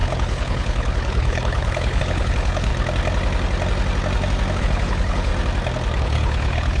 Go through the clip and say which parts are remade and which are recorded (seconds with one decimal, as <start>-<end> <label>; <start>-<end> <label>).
0.0-2.7 remade; 2.7-4.6 recorded; 4.6-5.3 remade; 5.3-6.0 recorded; 6.0-6.8 remade